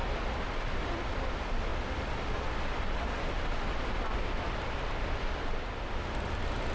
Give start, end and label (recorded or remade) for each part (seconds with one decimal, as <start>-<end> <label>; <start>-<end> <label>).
0.0-6.7 recorded